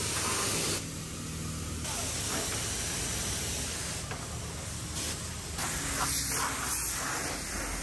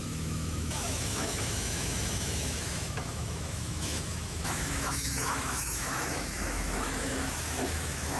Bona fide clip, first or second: first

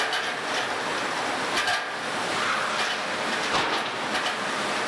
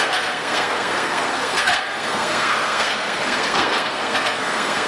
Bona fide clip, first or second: first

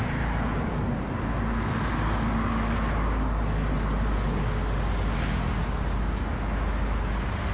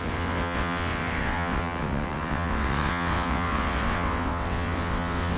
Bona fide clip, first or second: first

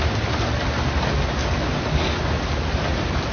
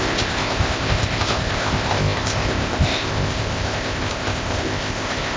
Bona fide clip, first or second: first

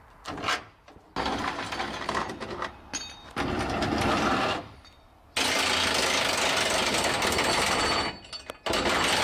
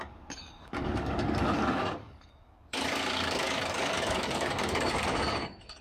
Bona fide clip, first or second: first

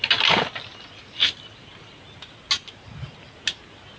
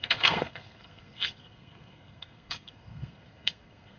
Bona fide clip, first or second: first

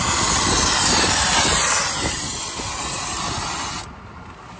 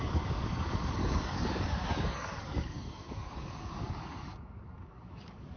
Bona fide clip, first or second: first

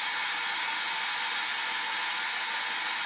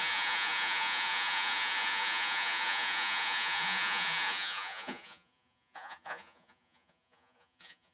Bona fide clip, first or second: first